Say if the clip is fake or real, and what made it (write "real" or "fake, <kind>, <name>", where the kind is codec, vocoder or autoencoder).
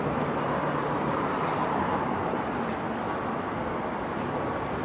real